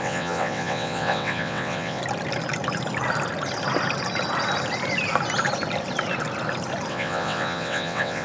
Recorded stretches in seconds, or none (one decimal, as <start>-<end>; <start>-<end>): 2.0-6.9